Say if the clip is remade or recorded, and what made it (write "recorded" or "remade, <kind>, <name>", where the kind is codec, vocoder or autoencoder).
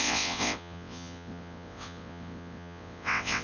remade, vocoder, WaveNeXt